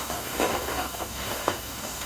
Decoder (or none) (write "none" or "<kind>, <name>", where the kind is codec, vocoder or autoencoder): codec, DAC